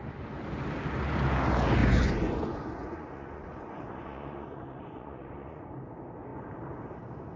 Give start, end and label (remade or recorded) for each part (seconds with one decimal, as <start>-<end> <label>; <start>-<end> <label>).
0.0-1.8 recorded; 1.8-5.8 remade; 5.8-7.4 recorded